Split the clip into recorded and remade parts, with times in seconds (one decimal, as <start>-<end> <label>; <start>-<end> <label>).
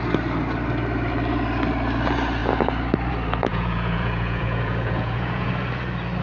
0.0-3.5 recorded; 3.5-5.5 remade; 5.5-6.2 recorded